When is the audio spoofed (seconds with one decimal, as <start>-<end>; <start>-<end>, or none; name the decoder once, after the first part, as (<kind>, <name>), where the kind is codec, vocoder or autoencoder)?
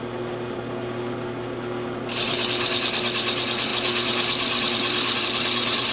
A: none